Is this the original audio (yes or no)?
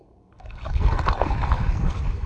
no